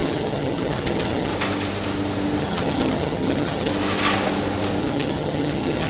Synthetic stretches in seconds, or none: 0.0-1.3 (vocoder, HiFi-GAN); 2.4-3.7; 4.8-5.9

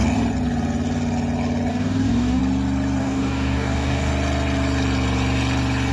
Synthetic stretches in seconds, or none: 1.7-2.4 (codec, DAC); 3.0-4.1

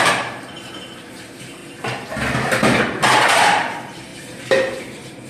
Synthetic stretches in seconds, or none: 0.0-1.6 (vocoder, BigVGAN v2); 3.4-5.3

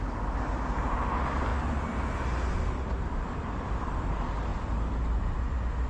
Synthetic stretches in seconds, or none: none

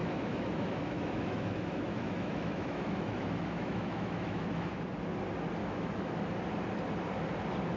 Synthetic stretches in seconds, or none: 0.0-4.7 (autoencoder, DAC-VAE); 5.6-6.3

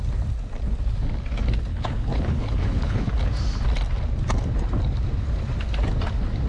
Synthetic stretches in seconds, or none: 1.7-3.1 (codec, HILCodec)

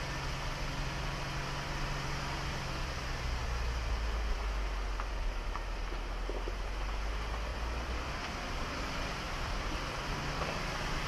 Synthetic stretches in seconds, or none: 7.5-10.6 (vocoder, BigVGAN v2)